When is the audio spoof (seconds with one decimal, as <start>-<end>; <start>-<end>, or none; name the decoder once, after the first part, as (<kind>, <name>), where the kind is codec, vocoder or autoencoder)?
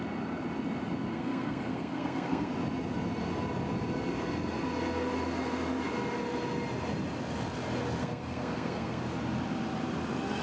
1.1-2.5 (codec, SNAC); 8.0-9.0